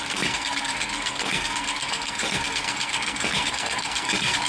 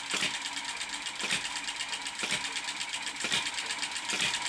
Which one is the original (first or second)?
second